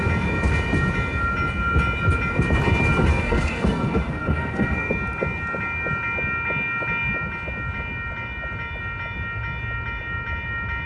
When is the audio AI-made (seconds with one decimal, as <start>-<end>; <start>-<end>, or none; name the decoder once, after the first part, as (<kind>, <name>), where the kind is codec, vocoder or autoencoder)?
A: 3.1-4.9 (codec, SNAC)

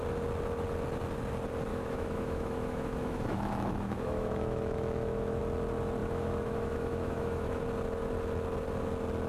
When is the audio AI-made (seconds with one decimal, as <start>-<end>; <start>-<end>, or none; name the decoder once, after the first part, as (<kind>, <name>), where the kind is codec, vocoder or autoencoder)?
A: 1.7-5.4 (autoencoder, DAC-VAE); 6.0-7.6

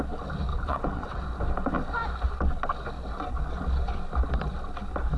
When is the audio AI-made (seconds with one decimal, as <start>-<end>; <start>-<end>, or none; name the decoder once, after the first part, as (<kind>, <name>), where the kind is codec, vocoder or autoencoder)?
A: 0.5-1.2 (vocoder, WaveNeXt)

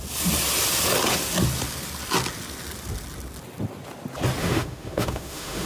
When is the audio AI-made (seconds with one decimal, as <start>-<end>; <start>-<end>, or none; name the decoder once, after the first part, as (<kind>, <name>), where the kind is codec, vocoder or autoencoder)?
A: 4.4-5.7 (autoencoder, DAC-VAE)

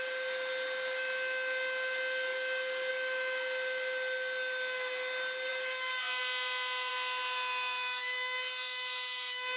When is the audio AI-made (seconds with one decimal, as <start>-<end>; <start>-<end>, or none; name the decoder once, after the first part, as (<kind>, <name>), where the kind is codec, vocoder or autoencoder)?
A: none